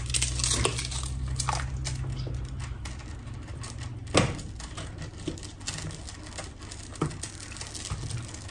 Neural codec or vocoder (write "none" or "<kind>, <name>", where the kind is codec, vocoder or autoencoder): none